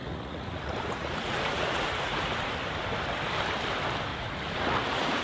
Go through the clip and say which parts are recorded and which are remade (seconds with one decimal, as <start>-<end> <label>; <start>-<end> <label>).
0.0-2.5 remade; 2.5-4.1 recorded; 4.1-5.2 remade